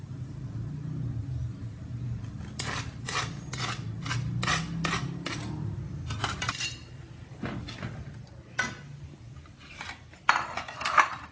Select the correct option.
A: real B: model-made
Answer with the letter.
A